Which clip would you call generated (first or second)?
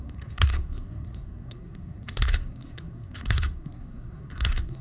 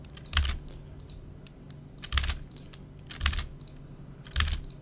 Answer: first